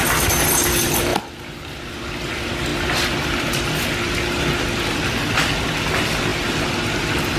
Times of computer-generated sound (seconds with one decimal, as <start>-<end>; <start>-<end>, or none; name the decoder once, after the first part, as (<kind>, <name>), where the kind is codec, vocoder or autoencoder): none